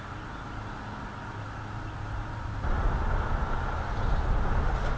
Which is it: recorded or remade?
recorded